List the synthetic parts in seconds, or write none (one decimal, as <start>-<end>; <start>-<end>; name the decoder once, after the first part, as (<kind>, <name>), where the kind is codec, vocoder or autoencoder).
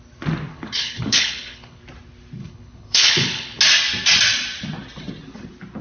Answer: 0.5-1.8 (codec, HILCodec); 2.4-3.6